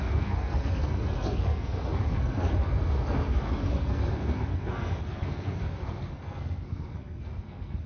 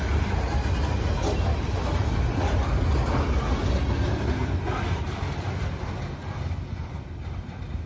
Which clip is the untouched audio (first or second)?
second